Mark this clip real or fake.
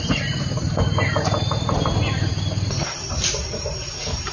real